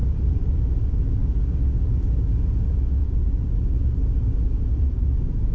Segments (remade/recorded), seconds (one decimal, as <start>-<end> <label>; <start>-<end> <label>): 0.0-0.6 remade; 0.6-3.0 recorded; 3.0-3.5 remade; 3.5-5.5 recorded